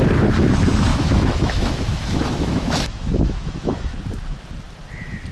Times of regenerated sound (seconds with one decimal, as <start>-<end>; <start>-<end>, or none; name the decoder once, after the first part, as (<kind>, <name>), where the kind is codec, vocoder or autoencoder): 0.9-4.0 (autoencoder, DAC-VAE)